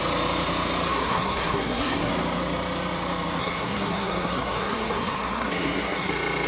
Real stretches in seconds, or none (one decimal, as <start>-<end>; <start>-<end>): 0.0-0.9; 2.1-3.4; 6.1-6.5